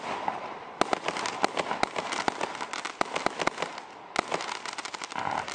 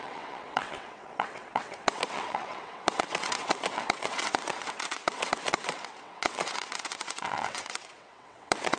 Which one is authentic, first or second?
first